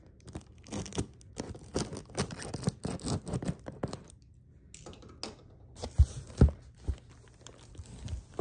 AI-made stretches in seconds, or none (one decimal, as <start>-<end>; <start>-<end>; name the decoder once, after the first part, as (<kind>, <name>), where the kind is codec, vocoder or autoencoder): none